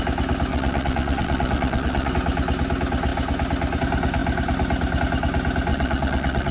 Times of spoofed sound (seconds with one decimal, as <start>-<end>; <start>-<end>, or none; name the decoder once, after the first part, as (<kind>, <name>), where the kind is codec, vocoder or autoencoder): 0.5-2.1 (vocoder, Vocos); 5.7-6.5